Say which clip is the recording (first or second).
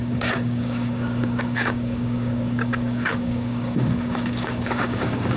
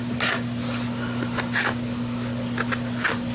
second